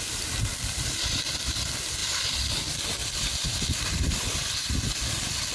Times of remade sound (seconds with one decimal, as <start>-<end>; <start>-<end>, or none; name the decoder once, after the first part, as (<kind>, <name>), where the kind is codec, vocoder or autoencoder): 0.5-1.2 (vocoder, BigVGAN v2); 2.0-2.6; 3.0-4.4